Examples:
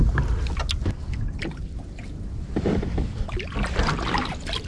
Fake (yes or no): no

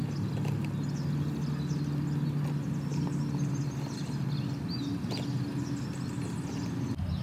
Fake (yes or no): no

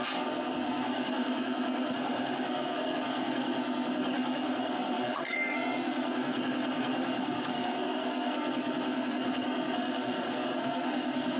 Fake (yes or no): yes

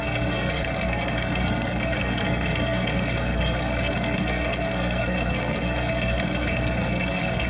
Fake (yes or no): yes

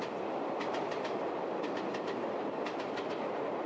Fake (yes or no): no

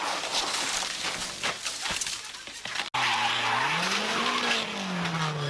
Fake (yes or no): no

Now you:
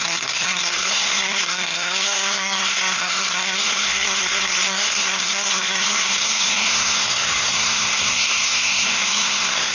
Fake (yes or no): yes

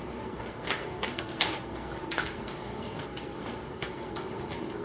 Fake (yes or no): yes